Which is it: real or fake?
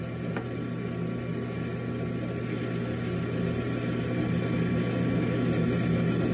real